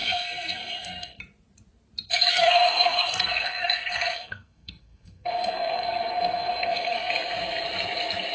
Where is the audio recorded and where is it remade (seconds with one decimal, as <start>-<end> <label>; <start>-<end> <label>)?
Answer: 0.0-1.2 remade; 1.2-2.3 recorded; 2.3-7.1 remade; 7.1-8.3 recorded